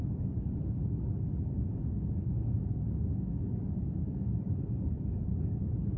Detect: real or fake fake